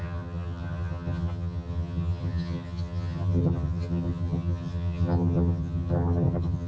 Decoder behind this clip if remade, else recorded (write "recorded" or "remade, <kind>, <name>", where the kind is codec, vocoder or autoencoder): remade, vocoder, HiFi-GAN